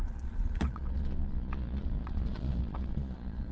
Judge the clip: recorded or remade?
remade